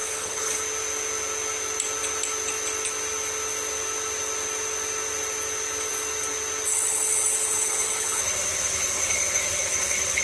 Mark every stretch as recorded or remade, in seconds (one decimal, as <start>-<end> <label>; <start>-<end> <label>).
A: 0.0-0.6 remade; 0.6-6.7 recorded; 6.7-10.2 remade